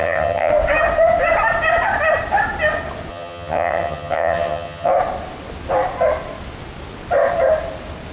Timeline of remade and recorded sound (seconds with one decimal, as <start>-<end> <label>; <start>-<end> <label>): 0.0-0.5 remade; 0.5-3.1 recorded; 3.1-4.9 remade; 4.9-8.1 recorded